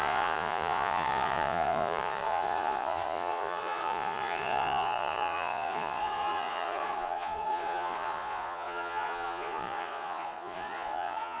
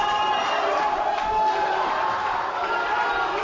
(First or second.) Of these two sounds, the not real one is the first